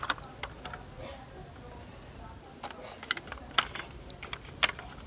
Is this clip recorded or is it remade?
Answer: recorded